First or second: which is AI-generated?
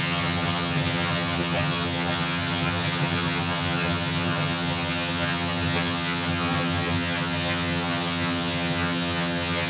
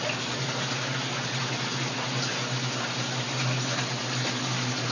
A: first